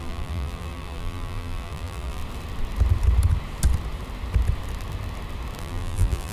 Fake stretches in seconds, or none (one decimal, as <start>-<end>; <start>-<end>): 0.0-2.2; 5.6-6.3